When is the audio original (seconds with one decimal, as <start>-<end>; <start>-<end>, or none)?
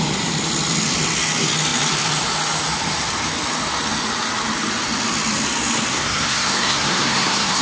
0.0-5.9